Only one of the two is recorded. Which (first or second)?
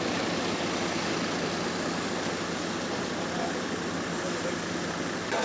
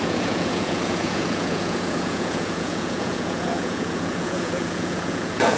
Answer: first